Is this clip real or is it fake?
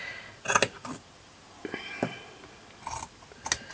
real